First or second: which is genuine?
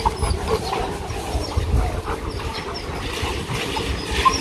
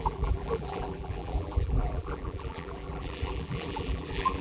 first